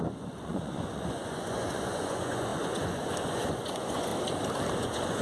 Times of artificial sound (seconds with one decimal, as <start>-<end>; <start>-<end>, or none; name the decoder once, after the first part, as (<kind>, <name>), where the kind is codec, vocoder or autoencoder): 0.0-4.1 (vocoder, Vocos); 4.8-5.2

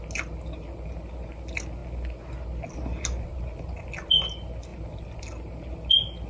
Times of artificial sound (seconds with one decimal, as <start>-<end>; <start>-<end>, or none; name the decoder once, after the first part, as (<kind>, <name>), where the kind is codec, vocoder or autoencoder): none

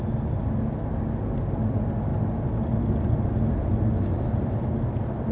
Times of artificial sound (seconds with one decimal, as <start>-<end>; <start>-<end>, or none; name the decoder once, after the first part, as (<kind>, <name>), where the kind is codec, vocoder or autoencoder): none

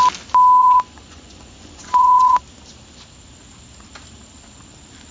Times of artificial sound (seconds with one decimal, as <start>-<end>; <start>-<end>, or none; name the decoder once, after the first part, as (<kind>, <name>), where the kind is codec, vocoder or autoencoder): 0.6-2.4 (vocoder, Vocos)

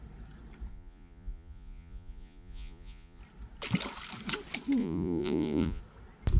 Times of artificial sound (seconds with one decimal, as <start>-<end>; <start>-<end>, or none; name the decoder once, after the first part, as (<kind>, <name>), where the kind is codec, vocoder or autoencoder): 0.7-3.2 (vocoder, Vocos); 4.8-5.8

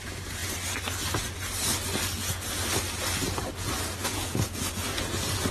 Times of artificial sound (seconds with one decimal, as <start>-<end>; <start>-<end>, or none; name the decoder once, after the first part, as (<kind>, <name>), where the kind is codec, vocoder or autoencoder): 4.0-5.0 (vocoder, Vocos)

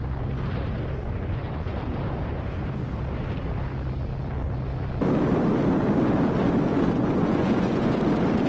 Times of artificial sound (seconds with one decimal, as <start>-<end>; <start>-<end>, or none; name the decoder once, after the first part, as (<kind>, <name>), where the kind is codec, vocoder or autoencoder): 1.0-1.8 (vocoder, Vocos); 6.7-7.9

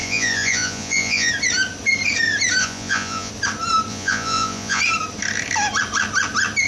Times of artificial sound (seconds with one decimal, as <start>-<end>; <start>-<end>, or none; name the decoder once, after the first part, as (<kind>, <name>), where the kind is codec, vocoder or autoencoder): 0.0-1.3 (vocoder, Vocos); 2.6-3.3; 3.9-4.8